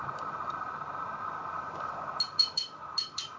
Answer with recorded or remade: recorded